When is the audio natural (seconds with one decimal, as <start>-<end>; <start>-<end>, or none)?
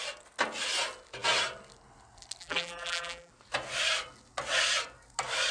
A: 0.0-2.4; 3.3-5.5